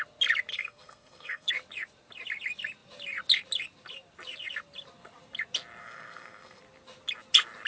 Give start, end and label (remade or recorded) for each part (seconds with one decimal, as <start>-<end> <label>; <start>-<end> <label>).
0.0-0.5 recorded; 0.5-1.5 remade; 1.5-5.8 recorded; 5.8-6.6 remade; 6.6-7.7 recorded